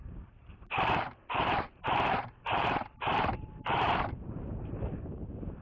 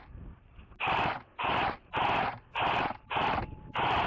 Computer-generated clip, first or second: first